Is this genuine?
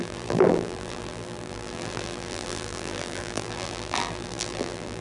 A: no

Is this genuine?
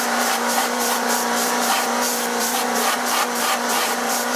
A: no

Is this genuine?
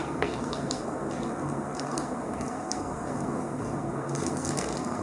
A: no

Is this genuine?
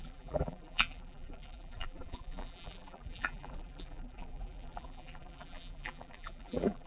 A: no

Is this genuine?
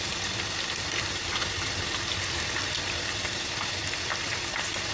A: yes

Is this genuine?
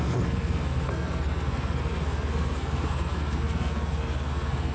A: no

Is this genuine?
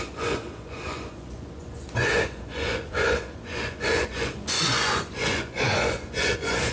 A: no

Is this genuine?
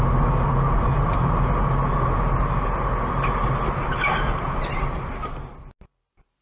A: yes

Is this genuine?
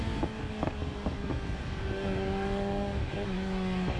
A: no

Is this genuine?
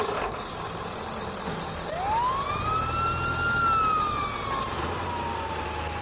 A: yes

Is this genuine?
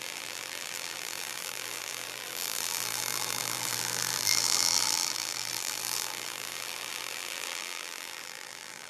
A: no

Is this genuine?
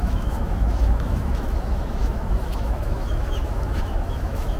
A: no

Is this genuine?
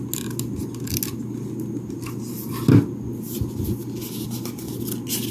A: yes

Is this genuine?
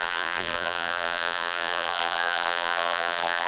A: no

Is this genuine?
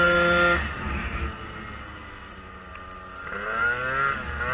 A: yes